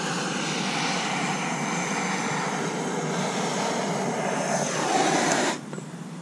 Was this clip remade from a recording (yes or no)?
yes